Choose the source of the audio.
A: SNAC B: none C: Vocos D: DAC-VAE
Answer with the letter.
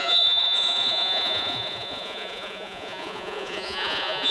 C